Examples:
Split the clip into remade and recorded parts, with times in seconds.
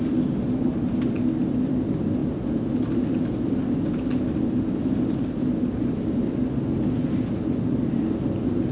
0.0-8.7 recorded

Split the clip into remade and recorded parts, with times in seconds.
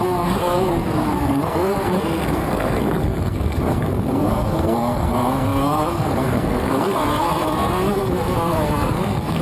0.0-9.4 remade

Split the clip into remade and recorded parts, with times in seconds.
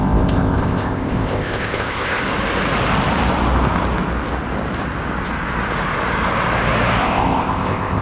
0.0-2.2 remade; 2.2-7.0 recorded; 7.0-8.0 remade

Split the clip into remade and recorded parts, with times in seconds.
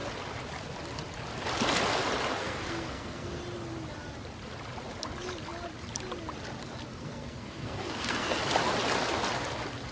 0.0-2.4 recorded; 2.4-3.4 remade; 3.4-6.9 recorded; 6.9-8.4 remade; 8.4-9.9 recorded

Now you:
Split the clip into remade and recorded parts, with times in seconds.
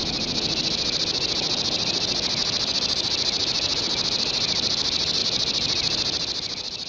0.0-6.9 recorded